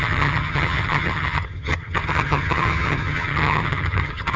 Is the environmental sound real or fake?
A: fake